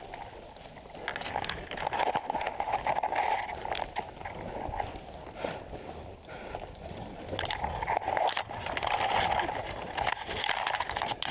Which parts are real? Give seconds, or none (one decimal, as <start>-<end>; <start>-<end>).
0.0-11.3